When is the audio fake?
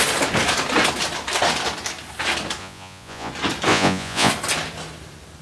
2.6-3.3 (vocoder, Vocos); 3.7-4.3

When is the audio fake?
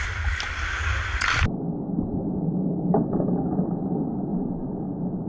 4.3-5.3 (vocoder, BigVGAN v2)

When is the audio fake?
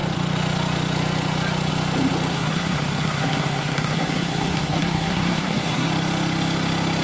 2.3-5.9 (codec, SNAC)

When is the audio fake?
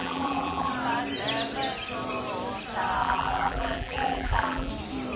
0.0-0.7 (vocoder, BigVGAN v2); 3.0-4.7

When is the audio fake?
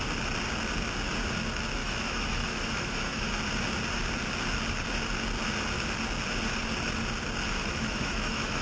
1.8-3.3 (autoencoder, DAC-VAE); 7.6-8.6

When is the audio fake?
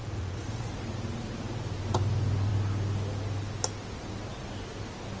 0.0-0.7 (vocoder, Vocos)